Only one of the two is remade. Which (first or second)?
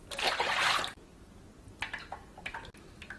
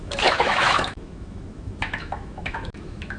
second